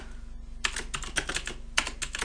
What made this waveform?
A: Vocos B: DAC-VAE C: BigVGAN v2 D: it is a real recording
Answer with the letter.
D